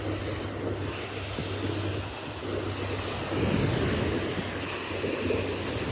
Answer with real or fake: real